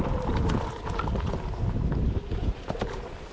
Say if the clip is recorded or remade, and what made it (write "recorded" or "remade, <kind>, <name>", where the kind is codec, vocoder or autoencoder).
recorded